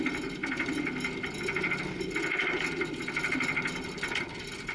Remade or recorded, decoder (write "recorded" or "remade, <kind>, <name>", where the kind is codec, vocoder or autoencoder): recorded